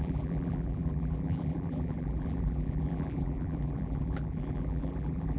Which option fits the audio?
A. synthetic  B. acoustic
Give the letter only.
A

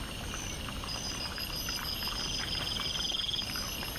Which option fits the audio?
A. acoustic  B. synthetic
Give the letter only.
A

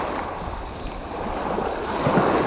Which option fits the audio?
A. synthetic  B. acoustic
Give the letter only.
B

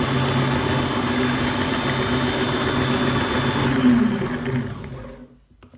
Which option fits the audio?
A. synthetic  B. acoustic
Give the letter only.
B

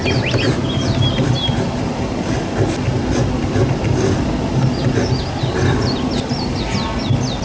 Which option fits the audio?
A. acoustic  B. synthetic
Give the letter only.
A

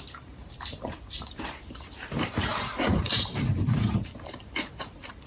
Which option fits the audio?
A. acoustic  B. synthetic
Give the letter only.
B